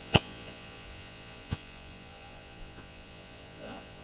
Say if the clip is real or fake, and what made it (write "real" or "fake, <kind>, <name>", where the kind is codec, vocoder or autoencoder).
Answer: fake, vocoder, Vocos